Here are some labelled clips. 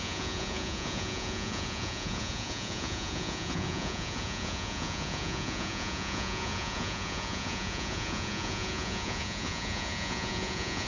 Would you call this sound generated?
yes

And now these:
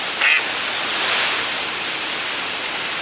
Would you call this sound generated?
no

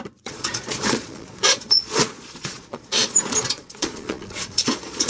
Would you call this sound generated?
yes